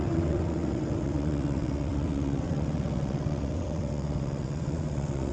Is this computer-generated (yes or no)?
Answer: yes